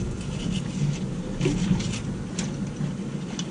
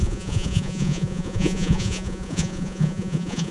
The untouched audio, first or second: first